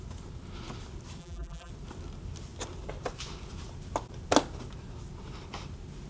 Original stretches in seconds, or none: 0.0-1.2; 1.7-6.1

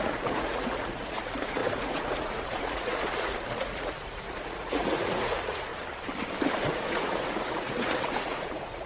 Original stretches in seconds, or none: 5.7-6.7

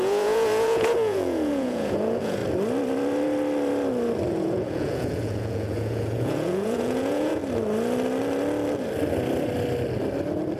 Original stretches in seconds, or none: 2.4-4.3; 7.4-10.6

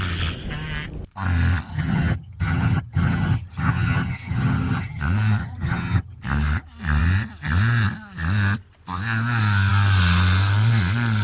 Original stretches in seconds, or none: 0.0-1.7; 5.0-5.4; 6.2-11.2

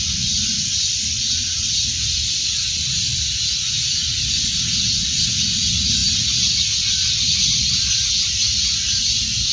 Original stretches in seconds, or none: 0.0-9.5

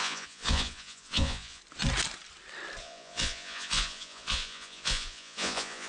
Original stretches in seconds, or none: 1.6-2.8